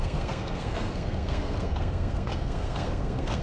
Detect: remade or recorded remade